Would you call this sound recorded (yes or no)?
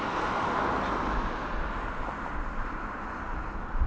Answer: yes